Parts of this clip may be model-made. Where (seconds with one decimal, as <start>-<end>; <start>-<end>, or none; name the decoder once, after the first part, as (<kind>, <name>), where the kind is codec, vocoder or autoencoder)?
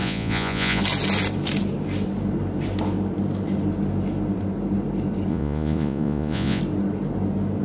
0.0-0.8 (vocoder, Vocos); 5.3-6.6